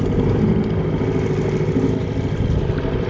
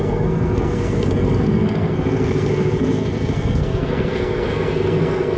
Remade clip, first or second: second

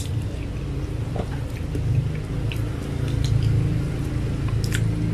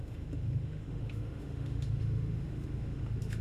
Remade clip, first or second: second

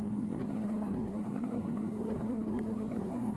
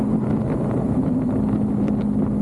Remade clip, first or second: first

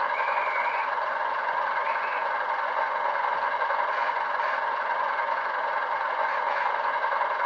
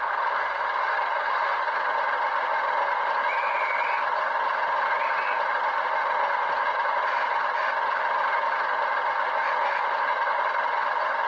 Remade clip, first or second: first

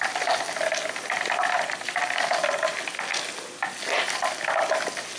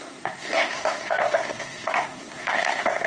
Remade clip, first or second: second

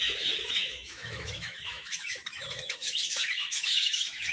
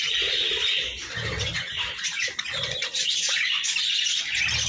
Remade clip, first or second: first